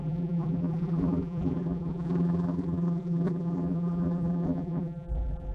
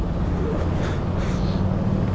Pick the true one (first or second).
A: second